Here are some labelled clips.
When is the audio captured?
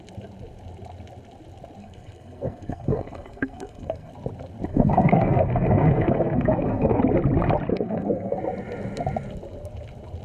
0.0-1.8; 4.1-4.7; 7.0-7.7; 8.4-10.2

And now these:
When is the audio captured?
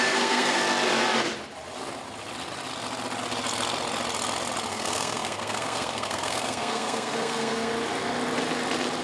0.6-4.7; 7.7-9.0